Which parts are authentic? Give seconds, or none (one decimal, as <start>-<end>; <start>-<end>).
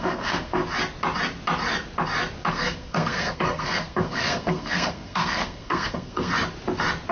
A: 0.6-2.5; 6.3-7.1